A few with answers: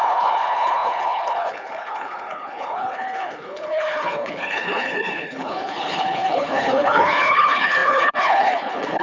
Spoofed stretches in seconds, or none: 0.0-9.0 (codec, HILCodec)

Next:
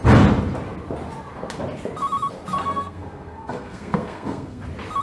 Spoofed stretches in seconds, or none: 2.6-4.6 (codec, SNAC)

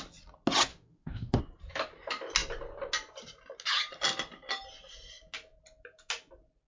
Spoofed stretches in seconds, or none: 0.7-1.4 (autoencoder, DAC-VAE)